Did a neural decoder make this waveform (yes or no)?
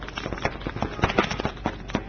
no